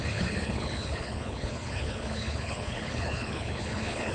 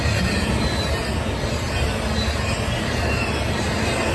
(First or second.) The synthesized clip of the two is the first